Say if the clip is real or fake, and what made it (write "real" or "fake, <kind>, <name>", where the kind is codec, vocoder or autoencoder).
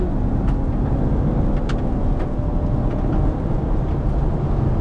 real